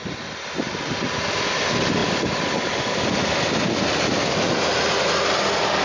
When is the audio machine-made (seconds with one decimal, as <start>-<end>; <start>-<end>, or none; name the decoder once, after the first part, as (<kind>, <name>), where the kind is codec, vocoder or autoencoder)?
none